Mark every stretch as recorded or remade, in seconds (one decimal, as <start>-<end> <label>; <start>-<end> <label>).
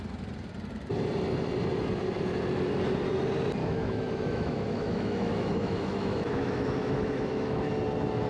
0.0-3.6 recorded; 3.6-7.7 remade; 7.7-8.3 recorded